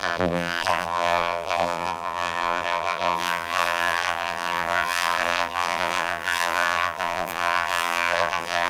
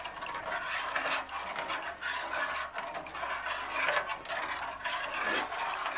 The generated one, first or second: first